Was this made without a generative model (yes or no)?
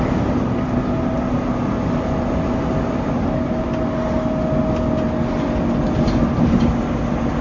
yes